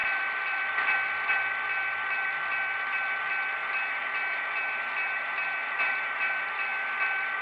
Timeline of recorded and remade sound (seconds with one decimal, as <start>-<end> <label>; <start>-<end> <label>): 0.0-3.6 recorded; 3.6-6.4 remade; 6.4-7.4 recorded